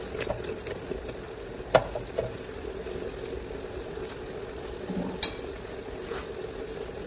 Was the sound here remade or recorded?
recorded